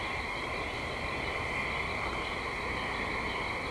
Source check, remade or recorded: recorded